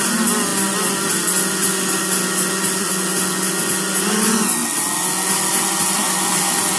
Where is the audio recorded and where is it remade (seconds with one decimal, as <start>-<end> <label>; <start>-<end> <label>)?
0.0-6.8 recorded